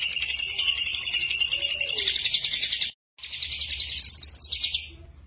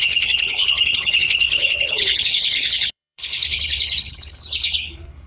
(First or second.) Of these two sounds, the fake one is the second